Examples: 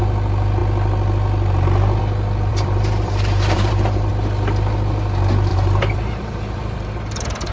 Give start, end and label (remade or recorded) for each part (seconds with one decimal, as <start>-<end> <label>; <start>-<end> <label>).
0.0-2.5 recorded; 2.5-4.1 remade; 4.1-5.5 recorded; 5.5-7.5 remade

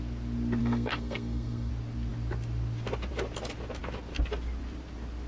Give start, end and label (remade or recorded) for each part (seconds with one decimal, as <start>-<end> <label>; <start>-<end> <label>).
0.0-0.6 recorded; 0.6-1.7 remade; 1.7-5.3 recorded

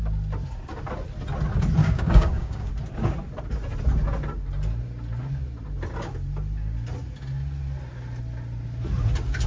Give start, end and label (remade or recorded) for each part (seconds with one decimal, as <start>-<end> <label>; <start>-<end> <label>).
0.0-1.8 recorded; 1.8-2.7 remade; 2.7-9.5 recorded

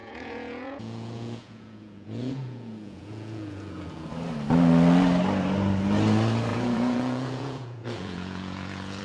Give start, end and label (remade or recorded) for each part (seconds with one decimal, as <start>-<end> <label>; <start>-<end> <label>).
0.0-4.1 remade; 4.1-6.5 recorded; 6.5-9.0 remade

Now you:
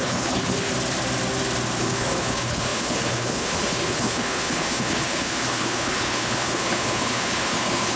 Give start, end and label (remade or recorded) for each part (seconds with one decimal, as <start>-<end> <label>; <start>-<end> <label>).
0.0-0.7 remade; 0.7-1.8 recorded; 1.8-8.0 remade